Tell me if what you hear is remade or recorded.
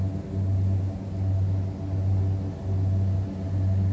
recorded